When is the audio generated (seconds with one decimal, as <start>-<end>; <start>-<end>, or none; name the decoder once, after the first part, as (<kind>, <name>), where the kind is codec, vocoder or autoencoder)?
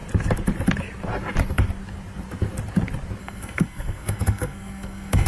3.2-5.3 (codec, SNAC)